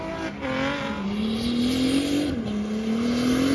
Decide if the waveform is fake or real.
real